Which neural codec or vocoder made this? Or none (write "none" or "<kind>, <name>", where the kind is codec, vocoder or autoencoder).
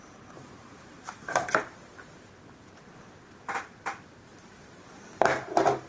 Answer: vocoder, BigVGAN v2